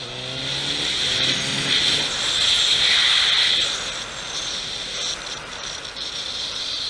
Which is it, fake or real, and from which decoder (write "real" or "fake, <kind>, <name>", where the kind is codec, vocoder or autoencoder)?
real